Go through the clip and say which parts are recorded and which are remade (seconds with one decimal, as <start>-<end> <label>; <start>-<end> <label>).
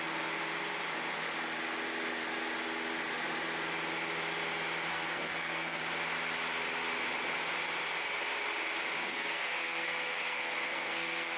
0.0-4.9 recorded; 4.9-5.8 remade; 5.8-9.0 recorded; 9.0-11.4 remade